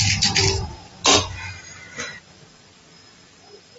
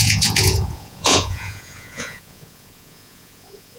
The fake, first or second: second